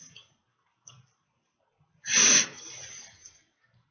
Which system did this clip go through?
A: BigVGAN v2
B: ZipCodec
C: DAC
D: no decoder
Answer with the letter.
A